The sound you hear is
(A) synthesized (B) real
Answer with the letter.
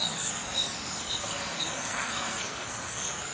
A